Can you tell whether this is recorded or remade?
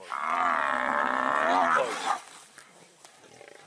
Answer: recorded